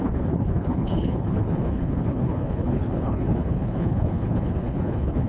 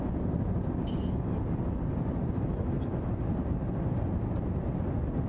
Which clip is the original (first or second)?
second